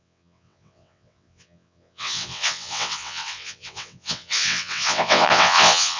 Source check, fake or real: fake